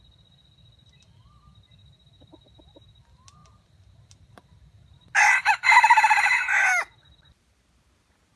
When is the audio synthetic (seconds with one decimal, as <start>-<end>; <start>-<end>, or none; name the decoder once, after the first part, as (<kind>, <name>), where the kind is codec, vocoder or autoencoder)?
none